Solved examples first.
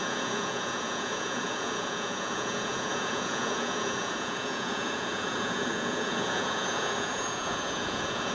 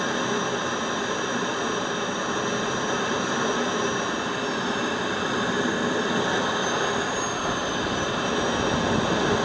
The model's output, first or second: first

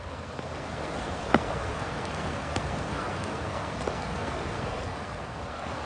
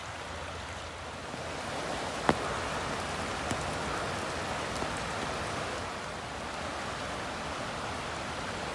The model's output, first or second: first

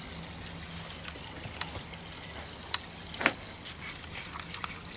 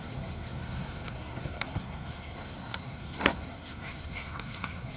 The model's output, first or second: second